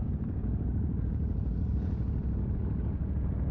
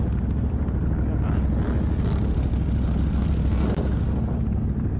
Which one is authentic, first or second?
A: second